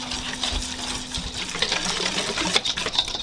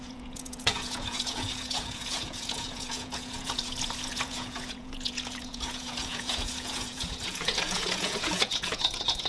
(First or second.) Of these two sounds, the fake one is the second